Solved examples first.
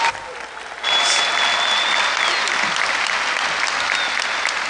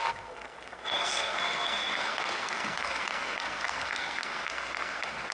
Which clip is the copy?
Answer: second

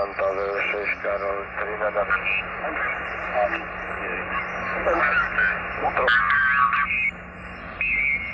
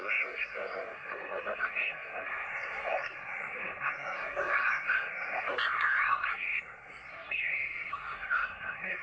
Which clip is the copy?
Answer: second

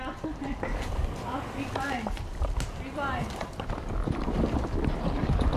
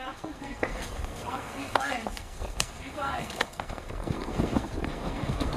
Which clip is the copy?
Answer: second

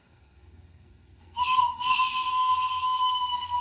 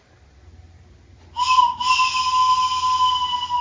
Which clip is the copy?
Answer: first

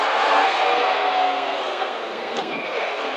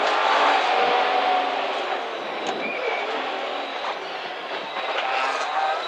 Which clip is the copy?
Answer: first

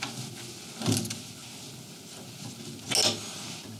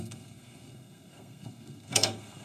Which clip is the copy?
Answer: second